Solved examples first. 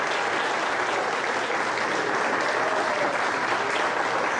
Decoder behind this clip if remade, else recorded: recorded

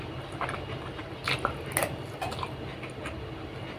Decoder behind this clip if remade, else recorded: recorded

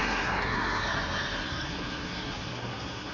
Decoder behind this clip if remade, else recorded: remade, codec, SNAC